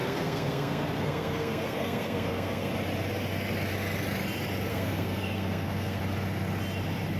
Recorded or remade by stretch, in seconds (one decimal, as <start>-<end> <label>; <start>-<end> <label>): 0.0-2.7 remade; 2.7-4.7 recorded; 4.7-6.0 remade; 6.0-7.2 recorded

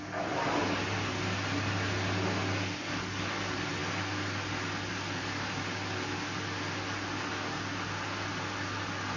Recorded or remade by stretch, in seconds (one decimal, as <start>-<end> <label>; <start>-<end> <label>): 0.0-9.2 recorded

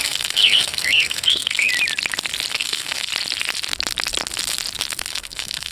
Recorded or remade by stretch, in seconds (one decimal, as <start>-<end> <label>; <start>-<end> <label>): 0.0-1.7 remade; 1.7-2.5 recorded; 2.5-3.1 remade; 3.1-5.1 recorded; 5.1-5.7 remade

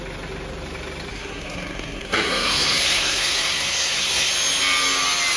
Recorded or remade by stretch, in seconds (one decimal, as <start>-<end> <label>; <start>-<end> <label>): 0.0-1.1 recorded; 1.1-4.3 remade; 4.3-5.4 recorded